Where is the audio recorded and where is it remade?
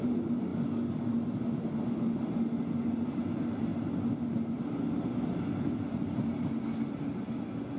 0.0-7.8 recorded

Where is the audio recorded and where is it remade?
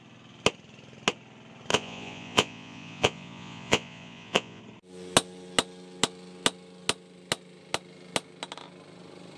0.0-1.7 recorded; 1.7-4.6 remade; 4.6-9.4 recorded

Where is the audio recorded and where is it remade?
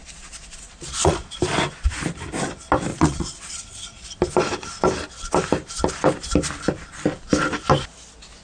0.0-1.3 remade; 1.3-2.9 recorded; 2.9-4.1 remade; 4.1-8.4 recorded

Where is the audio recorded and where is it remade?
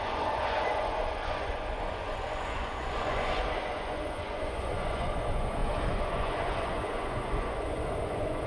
0.0-8.5 remade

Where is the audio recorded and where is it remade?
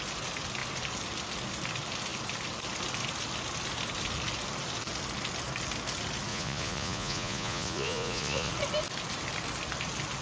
0.0-6.3 recorded; 6.3-8.5 remade; 8.5-10.2 recorded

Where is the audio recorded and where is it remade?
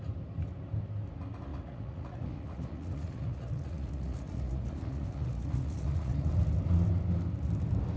0.0-1.5 recorded; 1.5-6.3 remade; 6.3-8.0 recorded